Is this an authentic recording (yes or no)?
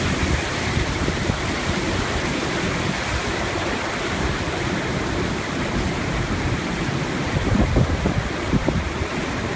no